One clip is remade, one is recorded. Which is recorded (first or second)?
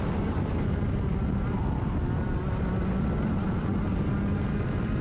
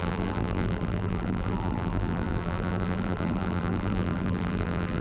first